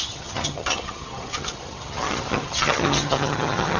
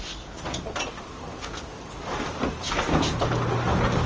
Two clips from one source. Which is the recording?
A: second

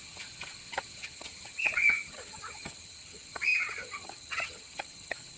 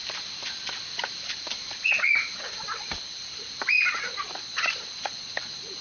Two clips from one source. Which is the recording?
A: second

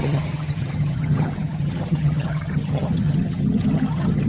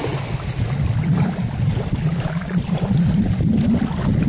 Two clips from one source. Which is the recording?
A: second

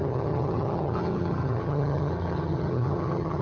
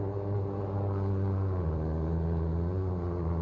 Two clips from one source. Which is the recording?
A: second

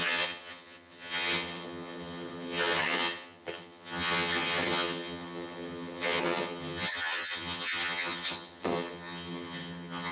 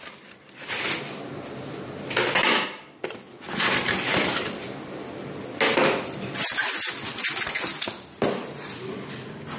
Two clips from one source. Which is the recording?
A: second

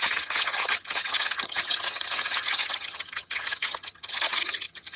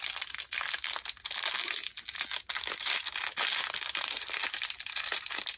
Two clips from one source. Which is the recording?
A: second